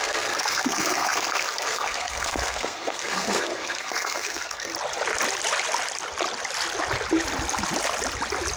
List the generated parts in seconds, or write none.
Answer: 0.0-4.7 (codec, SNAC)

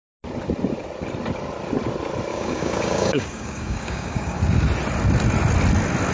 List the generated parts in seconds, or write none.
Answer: 2.3-4.4 (codec, DAC)

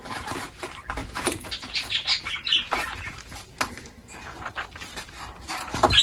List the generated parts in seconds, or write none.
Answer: 0.0-6.0 (vocoder, BigVGAN v2)

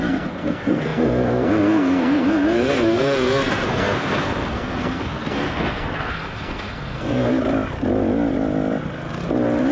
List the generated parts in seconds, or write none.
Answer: 0.0-7.3 (codec, SNAC)

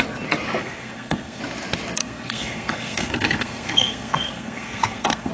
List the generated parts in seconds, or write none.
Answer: 0.6-1.4 (codec, SNAC); 2.0-5.3

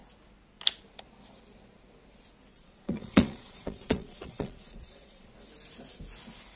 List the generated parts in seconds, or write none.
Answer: 2.5-5.3 (vocoder, Vocos)